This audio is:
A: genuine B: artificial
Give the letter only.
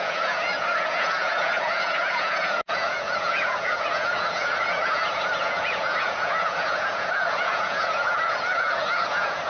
B